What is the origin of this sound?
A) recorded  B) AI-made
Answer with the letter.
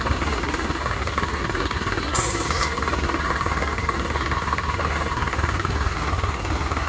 B